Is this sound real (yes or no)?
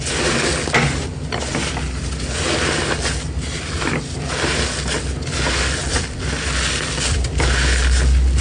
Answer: yes